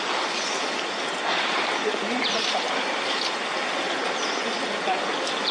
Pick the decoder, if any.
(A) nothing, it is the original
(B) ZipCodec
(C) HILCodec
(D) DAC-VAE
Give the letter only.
A